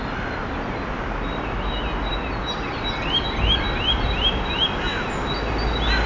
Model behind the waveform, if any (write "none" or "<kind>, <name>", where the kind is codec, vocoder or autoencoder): none